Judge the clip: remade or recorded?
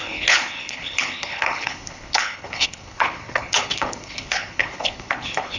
remade